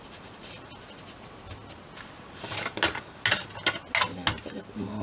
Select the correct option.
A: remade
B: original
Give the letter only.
B